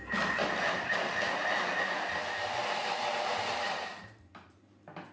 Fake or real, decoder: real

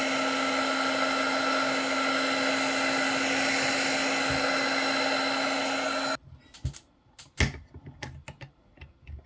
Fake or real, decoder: real